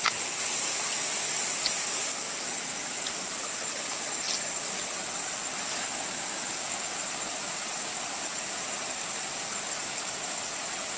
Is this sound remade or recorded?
recorded